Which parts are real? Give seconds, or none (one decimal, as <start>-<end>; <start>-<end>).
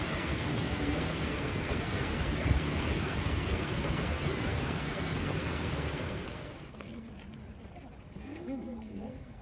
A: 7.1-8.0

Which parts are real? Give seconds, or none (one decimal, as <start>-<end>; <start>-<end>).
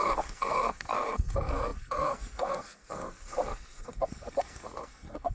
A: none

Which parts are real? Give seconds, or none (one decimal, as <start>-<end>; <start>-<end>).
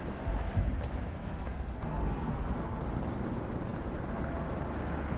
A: 0.0-1.1; 2.8-5.2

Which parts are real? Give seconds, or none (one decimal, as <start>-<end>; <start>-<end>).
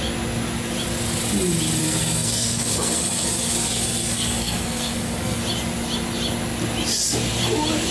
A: 0.0-1.8; 5.4-7.9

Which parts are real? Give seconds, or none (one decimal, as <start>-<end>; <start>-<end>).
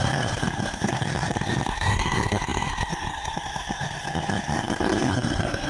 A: none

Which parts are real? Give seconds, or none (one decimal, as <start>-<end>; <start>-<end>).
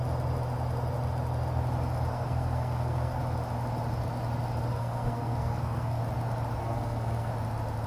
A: 0.0-2.1; 3.2-4.7; 6.0-6.6; 7.3-7.9